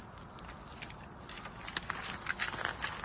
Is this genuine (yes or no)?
yes